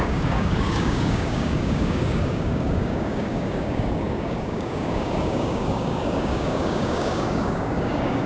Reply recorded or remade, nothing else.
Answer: remade